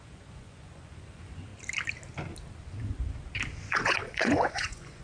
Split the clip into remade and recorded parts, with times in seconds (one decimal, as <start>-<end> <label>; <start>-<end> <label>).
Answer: 0.0-1.5 remade; 1.5-3.7 recorded; 3.7-5.0 remade